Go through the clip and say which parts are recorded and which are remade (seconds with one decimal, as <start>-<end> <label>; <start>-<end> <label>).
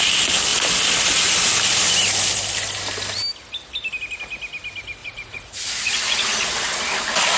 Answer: 0.0-5.0 recorded; 5.0-6.5 remade; 6.5-7.4 recorded